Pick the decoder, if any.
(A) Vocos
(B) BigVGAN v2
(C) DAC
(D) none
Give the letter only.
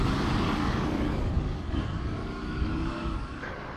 C